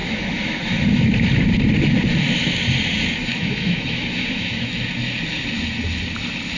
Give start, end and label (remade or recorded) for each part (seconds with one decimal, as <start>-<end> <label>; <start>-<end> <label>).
0.0-1.0 remade; 1.0-3.3 recorded; 3.3-4.7 remade; 4.7-6.6 recorded